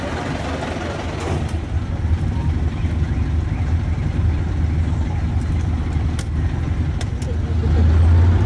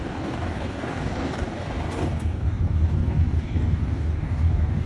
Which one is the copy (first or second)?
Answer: second